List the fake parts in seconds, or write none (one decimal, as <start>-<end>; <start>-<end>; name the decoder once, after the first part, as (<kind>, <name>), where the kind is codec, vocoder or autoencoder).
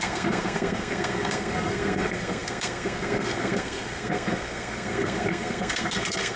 0.0-6.4 (codec, SNAC)